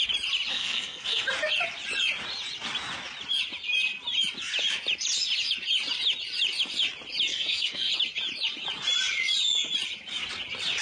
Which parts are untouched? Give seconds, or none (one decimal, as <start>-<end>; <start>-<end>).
0.0-0.5; 1.3-7.3; 7.9-10.8